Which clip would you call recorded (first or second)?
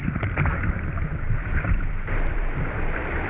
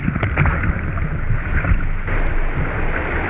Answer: second